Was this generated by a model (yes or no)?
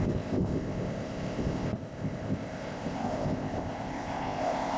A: yes